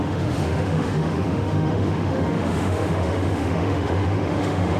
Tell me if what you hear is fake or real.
fake